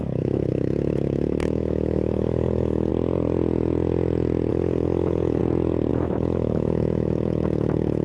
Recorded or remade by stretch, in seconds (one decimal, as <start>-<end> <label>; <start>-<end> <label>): 0.0-2.9 remade; 2.9-4.5 recorded; 4.5-5.4 remade; 5.4-5.9 recorded; 5.9-8.0 remade